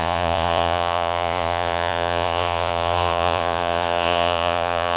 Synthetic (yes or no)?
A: yes